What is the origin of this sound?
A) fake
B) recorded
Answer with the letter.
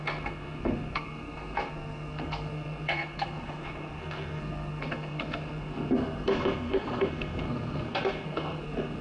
A